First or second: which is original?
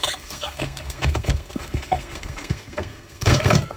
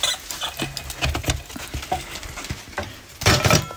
second